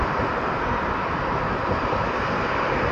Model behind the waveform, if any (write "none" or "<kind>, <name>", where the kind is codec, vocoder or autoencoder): none